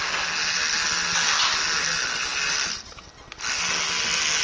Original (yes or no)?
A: yes